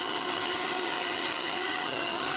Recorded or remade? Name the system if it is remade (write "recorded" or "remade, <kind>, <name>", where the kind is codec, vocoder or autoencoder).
remade, vocoder, HiFi-GAN